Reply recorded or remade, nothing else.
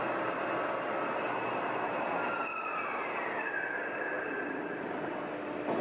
recorded